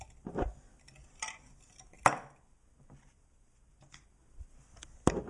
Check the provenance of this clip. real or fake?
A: real